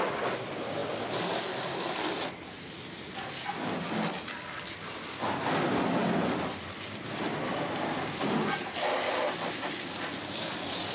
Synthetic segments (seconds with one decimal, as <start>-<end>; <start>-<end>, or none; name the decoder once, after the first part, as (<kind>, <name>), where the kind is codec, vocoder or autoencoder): none